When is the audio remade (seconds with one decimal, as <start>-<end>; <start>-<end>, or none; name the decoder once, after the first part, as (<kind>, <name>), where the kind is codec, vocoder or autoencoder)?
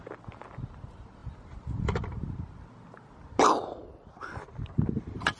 1.2-2.0 (vocoder, BigVGAN v2)